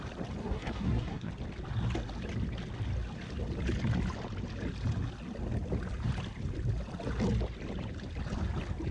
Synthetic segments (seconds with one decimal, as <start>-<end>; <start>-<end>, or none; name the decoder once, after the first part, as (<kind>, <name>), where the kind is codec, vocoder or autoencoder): 0.4-1.3 (codec, SNAC)